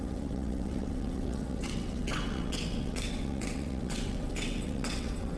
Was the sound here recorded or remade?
remade